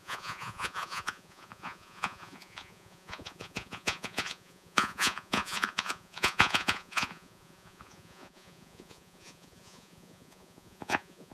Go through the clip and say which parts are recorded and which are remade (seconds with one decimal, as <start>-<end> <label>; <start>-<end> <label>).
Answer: 0.0-11.3 remade